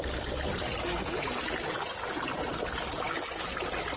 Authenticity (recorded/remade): recorded